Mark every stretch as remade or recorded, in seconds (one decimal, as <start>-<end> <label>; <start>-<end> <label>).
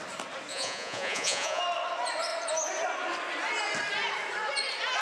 0.0-0.5 recorded; 0.5-1.6 remade; 1.6-5.0 recorded